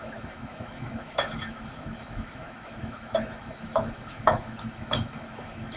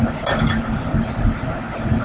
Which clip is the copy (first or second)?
first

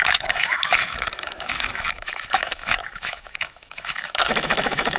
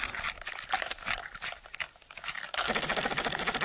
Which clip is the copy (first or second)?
first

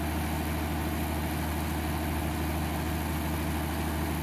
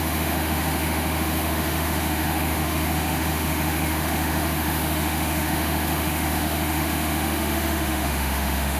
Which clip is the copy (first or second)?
second